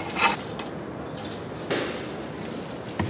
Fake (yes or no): no